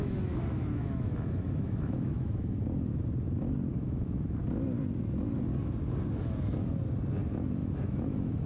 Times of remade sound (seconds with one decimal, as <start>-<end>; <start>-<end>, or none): 0.0-2.6; 3.7-4.4; 7.6-8.5